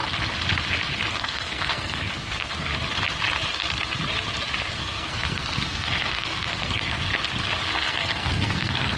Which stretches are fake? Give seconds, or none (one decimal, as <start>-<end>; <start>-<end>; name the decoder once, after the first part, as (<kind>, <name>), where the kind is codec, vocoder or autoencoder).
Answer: 1.1-2.7 (codec, SNAC); 4.7-7.1; 7.9-9.0